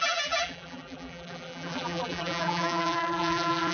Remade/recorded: remade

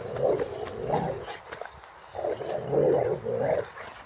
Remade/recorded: recorded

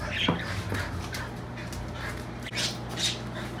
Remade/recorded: recorded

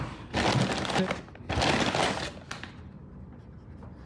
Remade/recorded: recorded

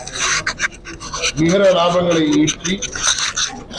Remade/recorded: recorded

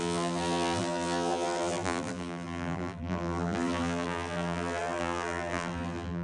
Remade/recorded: remade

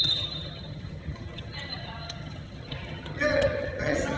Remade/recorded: remade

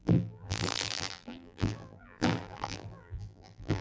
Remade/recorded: remade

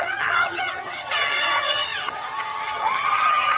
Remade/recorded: remade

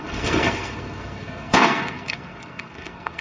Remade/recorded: remade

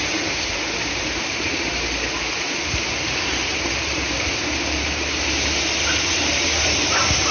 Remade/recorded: remade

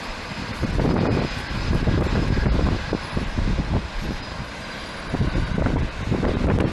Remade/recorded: recorded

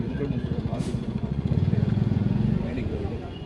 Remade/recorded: remade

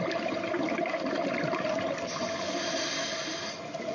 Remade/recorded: recorded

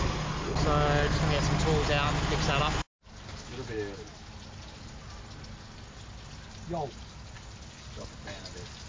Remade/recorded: recorded